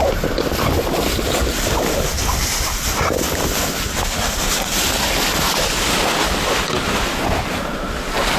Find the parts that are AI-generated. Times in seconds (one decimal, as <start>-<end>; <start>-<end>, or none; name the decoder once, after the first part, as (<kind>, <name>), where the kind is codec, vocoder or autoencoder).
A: none